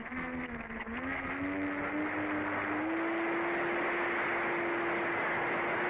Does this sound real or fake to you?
real